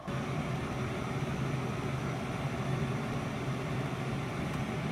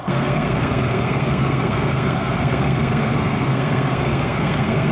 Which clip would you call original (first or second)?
first